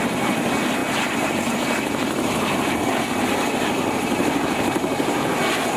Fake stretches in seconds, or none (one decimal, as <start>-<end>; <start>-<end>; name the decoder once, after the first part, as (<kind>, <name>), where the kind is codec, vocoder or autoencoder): none